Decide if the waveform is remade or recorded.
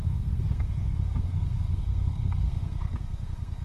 remade